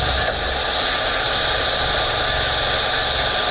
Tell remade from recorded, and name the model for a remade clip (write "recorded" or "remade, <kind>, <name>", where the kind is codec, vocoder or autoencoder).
recorded